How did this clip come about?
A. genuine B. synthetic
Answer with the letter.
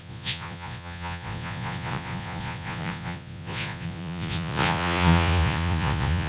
B